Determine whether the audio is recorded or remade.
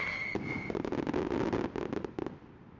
recorded